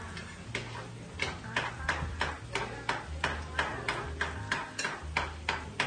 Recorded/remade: recorded